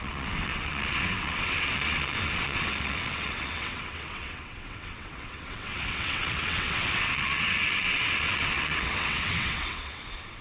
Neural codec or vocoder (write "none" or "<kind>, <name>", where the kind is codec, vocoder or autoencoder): vocoder, WaveNeXt